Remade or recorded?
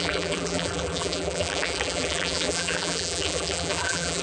remade